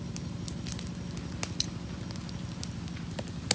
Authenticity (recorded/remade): recorded